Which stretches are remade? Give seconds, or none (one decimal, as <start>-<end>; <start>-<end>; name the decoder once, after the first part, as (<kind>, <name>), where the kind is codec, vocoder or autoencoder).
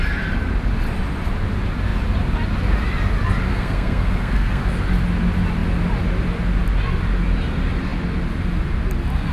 3.5-4.6 (codec, SNAC)